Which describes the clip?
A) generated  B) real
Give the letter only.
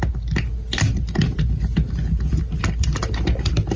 B